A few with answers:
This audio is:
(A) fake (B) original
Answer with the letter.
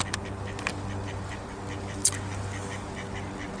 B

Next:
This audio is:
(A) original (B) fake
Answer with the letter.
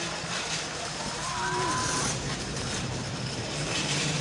B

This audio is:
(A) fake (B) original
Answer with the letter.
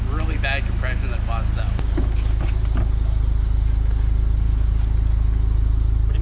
B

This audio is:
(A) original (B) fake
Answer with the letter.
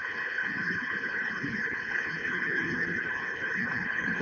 B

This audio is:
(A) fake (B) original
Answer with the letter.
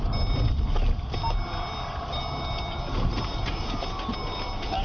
B